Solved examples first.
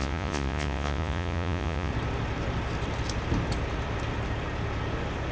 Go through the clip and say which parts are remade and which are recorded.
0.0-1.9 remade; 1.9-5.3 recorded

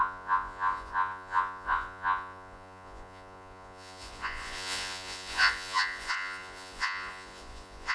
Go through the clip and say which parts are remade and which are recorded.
0.0-7.9 remade

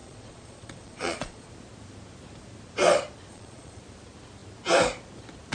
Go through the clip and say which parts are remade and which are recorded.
0.0-1.5 remade; 1.5-3.3 recorded; 3.3-3.8 remade; 3.8-5.5 recorded